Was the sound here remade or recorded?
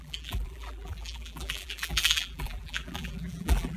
remade